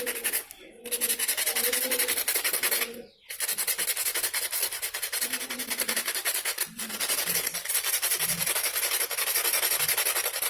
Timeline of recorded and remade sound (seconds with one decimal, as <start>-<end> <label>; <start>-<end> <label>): 0.0-4.7 recorded; 4.7-6.8 remade; 6.8-10.5 recorded